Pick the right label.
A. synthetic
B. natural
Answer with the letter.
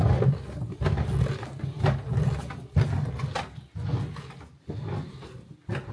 B